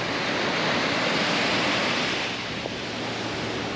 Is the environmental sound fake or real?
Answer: real